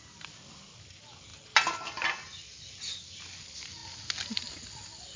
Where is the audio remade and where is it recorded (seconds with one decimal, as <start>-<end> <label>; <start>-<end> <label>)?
0.0-5.2 recorded